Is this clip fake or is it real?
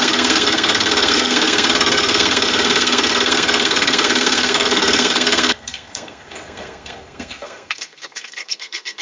fake